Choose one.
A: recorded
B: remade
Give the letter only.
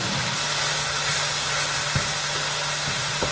A